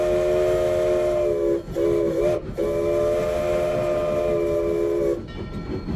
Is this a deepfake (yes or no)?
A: no